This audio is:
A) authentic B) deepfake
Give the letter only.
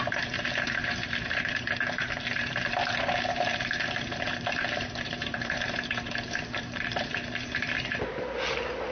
B